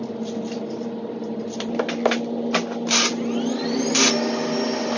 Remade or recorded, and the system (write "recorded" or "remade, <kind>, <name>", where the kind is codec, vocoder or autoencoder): recorded